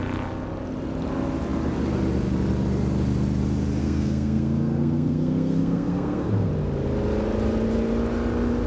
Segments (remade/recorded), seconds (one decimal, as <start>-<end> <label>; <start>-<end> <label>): 0.0-3.8 recorded; 3.8-6.5 remade; 6.5-8.7 recorded